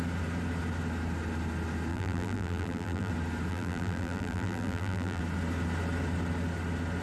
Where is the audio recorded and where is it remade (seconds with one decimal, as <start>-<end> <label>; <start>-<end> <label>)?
0.0-1.9 recorded; 1.9-3.1 remade; 3.1-3.5 recorded; 3.5-5.2 remade; 5.2-7.0 recorded